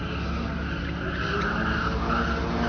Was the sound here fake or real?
real